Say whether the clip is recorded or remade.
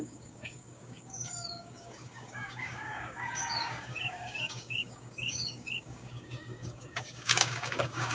remade